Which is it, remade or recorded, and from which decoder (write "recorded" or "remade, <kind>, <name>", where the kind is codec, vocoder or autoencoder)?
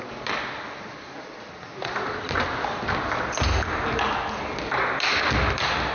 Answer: recorded